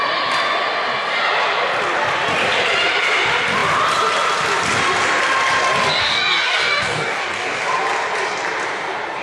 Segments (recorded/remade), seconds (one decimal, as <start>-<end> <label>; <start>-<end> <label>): 0.0-6.0 recorded; 6.0-7.6 remade; 7.6-9.2 recorded